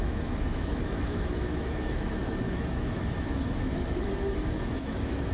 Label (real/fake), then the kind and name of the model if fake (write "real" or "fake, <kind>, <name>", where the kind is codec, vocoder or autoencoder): fake, autoencoder, DAC-VAE